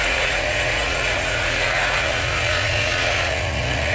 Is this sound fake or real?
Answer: fake